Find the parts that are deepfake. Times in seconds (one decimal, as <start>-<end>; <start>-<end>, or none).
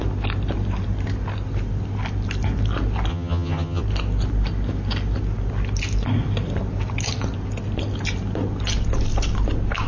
3.1-3.8